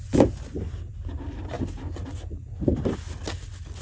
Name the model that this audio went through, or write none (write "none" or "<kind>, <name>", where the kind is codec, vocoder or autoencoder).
none